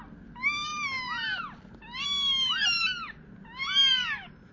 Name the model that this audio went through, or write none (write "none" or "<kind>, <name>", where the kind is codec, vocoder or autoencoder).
none